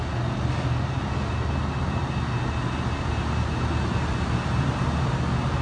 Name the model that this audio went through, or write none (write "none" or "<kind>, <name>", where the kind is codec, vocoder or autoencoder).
none